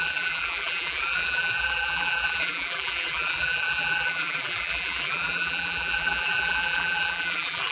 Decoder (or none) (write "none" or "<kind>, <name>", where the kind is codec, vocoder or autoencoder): vocoder, BigVGAN v2